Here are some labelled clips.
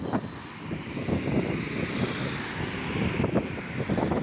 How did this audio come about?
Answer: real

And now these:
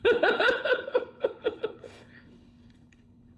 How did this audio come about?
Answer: fake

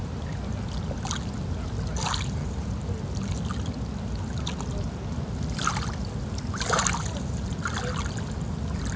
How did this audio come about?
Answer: real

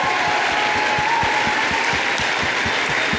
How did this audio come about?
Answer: real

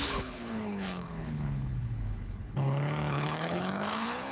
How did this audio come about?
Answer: fake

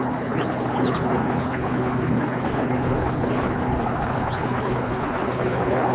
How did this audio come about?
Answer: fake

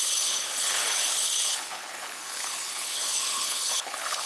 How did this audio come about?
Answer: fake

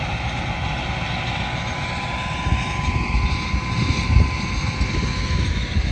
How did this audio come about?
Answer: real